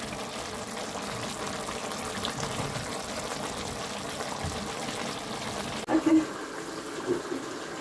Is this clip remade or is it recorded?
recorded